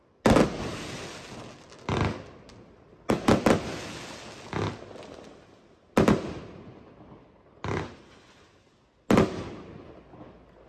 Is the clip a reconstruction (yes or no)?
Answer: no